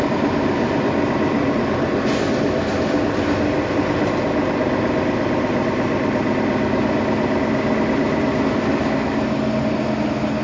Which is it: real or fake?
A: real